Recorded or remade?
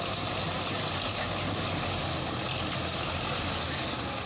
recorded